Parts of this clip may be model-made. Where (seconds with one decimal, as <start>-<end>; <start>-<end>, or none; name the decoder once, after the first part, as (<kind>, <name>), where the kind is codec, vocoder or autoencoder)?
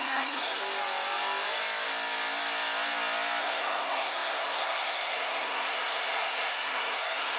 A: 0.0-0.6 (codec, SNAC); 3.4-7.4